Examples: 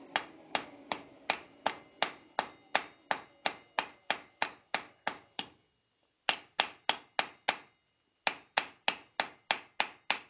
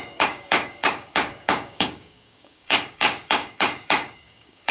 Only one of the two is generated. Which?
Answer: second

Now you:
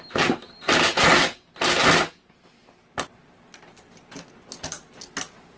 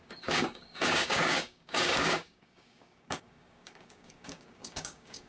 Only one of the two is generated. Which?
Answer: second